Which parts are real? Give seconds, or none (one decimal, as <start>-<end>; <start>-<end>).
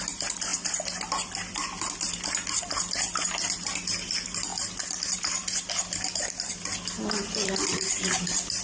0.0-8.6